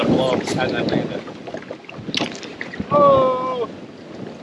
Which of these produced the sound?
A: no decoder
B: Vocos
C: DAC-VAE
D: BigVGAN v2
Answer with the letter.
A